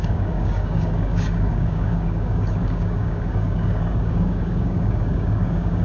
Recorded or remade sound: remade